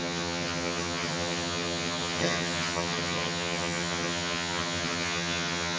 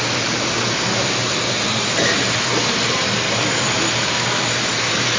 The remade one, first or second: first